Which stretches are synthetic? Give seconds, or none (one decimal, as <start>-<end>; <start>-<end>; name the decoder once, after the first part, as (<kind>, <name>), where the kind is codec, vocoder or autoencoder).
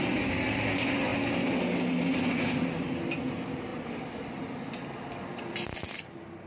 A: none